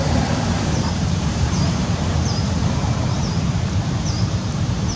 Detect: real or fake fake